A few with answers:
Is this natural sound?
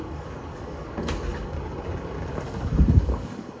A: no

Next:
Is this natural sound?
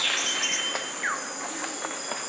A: yes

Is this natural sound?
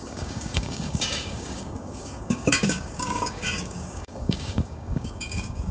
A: no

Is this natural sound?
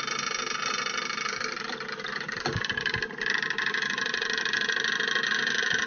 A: yes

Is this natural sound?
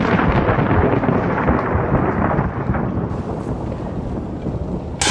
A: yes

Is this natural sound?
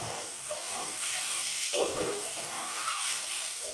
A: no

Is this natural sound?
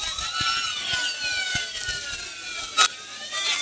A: yes